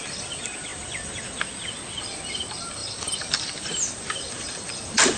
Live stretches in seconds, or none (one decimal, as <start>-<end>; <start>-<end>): 0.0-2.8; 4.2-5.2